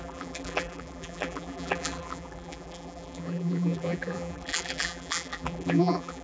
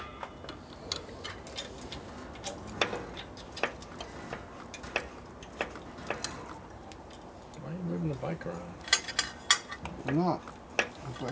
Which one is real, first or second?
second